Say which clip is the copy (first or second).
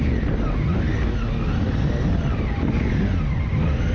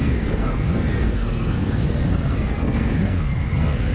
second